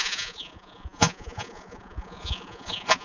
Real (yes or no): no